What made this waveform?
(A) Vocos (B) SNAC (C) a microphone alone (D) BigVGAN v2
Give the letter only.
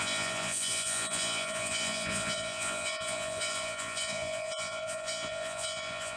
A